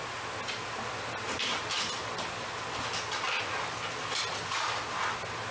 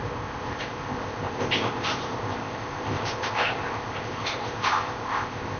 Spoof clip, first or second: second